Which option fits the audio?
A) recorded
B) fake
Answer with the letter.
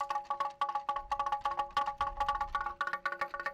A